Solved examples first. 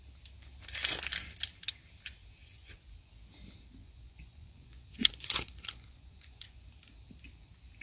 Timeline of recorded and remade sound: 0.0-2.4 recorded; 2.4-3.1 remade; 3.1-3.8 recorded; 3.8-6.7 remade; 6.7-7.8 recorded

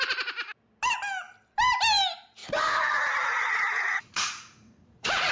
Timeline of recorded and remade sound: 0.0-2.4 recorded; 2.4-5.3 remade

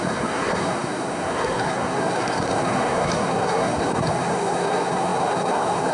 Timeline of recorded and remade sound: 0.0-5.9 remade

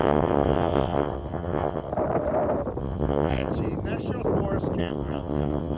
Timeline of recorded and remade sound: 0.0-1.9 remade; 1.9-2.8 recorded; 2.8-3.5 remade; 3.5-4.8 recorded; 4.8-5.8 remade